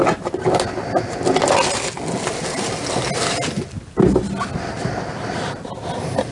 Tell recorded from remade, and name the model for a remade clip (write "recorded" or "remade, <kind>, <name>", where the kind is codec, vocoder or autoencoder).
recorded